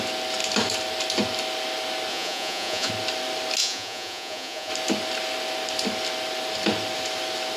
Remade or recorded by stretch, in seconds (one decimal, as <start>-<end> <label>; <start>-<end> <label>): 0.0-2.1 recorded; 2.1-2.9 remade; 2.9-3.6 recorded; 3.6-4.7 remade; 4.7-7.6 recorded